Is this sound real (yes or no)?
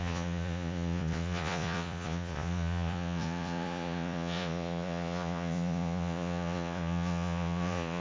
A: no